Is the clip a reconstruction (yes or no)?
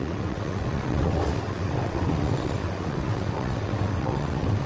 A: yes